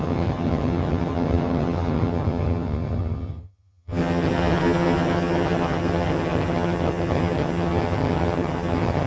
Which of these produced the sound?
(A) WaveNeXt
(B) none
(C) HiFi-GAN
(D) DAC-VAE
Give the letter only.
C